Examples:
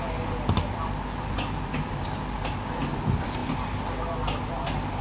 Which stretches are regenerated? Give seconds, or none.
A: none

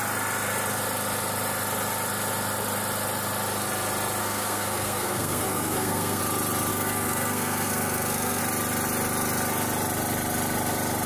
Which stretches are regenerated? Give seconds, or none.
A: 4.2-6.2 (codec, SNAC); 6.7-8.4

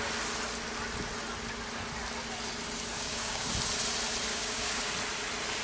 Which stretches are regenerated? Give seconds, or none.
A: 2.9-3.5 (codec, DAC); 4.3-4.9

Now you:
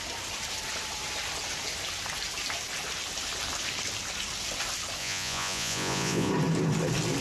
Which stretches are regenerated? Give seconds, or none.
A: 5.0-6.3 (vocoder, Vocos)

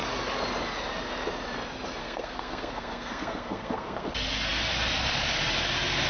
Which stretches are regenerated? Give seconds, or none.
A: 2.0-4.1 (codec, SNAC)

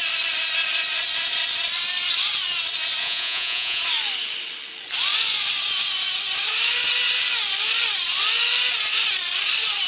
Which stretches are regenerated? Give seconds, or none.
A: 3.0-3.8 (vocoder, Vocos)